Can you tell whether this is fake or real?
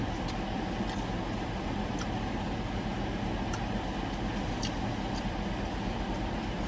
real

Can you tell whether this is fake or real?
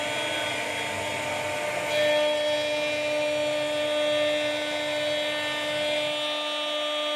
real